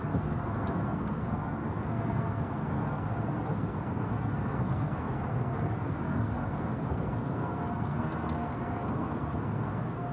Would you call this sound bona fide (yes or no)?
no